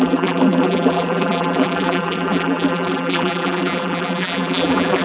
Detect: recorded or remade remade